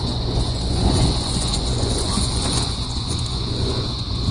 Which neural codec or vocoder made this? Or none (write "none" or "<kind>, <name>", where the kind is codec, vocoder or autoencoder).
vocoder, Vocos